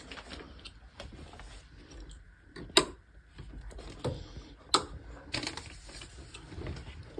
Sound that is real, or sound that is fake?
real